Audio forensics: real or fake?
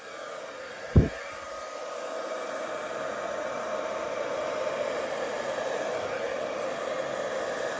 real